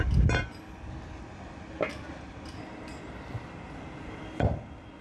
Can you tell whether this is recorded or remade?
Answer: recorded